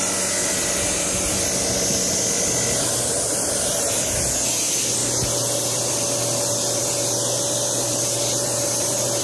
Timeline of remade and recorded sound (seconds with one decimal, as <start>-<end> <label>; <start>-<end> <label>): 0.0-9.2 recorded